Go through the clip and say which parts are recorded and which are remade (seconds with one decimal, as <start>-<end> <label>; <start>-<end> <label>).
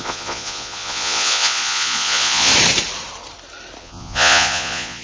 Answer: 0.0-2.5 remade; 2.5-3.8 recorded; 3.8-5.0 remade